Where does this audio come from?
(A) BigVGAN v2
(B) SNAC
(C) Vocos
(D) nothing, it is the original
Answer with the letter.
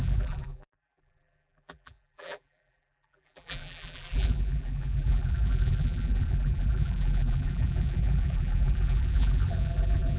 A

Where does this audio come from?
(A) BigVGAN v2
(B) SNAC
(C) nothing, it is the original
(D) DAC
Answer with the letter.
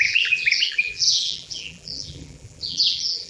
A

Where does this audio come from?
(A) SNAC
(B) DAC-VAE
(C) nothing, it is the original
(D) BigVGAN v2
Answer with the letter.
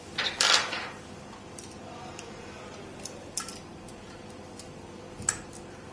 D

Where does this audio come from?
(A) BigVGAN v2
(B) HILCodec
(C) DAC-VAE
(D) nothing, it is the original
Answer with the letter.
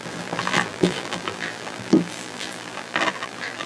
A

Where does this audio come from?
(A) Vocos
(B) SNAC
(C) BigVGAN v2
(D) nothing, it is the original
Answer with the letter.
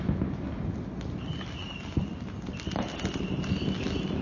D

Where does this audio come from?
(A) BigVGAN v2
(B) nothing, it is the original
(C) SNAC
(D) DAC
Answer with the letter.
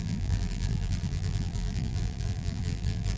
A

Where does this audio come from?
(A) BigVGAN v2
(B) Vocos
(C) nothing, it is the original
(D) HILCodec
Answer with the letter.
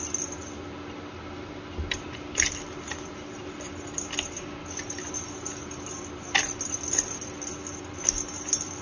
C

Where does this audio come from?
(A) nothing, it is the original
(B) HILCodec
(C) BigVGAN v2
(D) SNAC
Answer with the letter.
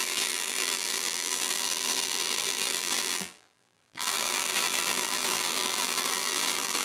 C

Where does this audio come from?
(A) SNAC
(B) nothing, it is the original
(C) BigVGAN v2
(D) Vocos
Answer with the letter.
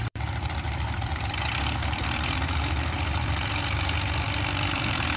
C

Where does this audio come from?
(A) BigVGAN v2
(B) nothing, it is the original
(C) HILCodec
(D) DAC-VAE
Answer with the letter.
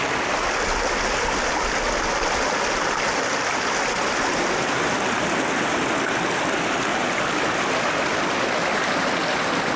B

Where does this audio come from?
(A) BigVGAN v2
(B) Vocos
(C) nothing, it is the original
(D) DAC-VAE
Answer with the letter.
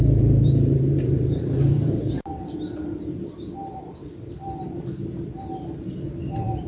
A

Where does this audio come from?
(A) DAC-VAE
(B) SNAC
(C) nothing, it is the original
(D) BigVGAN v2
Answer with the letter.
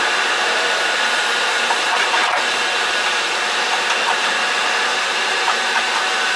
D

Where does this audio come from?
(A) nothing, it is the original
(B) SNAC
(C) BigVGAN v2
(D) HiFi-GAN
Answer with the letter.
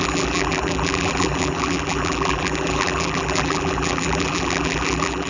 C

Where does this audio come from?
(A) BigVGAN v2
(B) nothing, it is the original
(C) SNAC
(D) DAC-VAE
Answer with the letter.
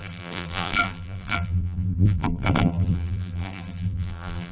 A